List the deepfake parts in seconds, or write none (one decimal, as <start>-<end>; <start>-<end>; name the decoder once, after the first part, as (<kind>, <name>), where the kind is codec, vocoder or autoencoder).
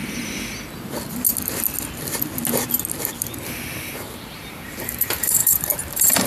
3.8-6.3 (vocoder, BigVGAN v2)